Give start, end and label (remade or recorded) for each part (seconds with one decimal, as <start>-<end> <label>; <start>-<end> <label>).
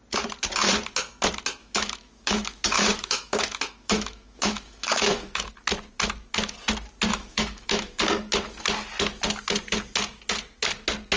0.0-1.6 recorded; 1.6-5.5 remade; 5.5-7.1 recorded; 7.1-8.0 remade; 8.0-11.2 recorded